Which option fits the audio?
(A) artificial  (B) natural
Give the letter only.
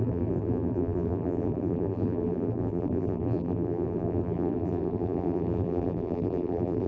A